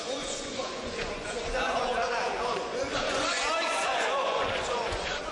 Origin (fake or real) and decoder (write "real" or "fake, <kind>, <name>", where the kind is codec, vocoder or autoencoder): fake, vocoder, Vocos